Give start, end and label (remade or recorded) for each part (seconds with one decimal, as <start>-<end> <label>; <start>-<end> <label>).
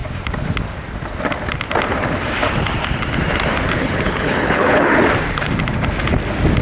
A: 0.0-3.8 recorded; 3.8-4.9 remade; 4.9-6.6 recorded